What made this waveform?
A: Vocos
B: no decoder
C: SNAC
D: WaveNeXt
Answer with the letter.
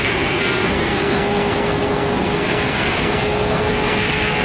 C